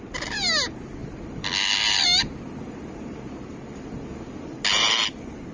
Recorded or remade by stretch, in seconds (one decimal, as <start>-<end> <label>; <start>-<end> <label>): 0.0-5.5 recorded